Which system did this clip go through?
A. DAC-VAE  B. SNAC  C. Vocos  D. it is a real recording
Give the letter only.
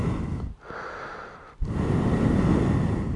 D